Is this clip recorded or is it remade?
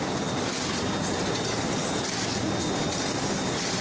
recorded